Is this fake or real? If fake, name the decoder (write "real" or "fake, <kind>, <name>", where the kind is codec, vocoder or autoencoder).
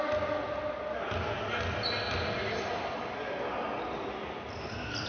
real